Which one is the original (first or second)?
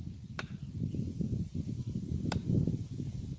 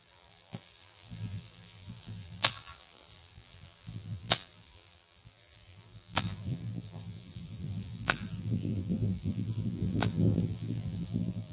first